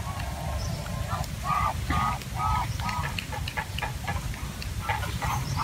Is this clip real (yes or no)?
yes